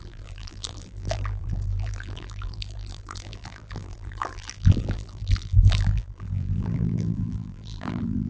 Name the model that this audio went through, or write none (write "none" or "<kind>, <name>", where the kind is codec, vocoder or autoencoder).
vocoder, BigVGAN v2